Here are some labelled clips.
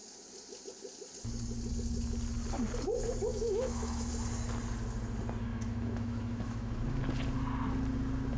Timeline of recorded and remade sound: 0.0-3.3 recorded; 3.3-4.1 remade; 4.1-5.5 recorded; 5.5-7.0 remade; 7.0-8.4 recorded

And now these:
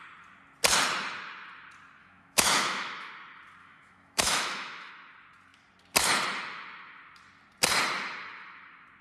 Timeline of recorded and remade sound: 0.0-2.0 recorded; 2.0-3.1 remade; 3.1-3.6 recorded; 3.6-4.9 remade; 4.9-9.0 recorded